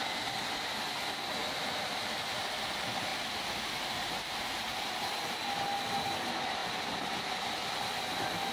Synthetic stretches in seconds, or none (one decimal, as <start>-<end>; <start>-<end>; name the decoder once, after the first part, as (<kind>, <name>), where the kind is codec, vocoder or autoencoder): 1.4-2.4 (vocoder, BigVGAN v2); 3.1-4.9

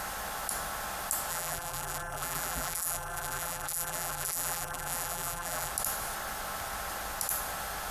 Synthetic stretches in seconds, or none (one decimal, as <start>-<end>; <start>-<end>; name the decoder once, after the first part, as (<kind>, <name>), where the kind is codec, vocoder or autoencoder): 1.3-5.7 (vocoder, BigVGAN v2)

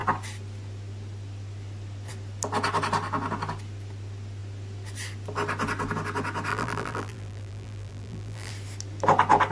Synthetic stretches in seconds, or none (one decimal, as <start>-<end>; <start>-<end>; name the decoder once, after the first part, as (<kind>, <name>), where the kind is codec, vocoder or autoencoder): 6.5-8.5 (vocoder, BigVGAN v2)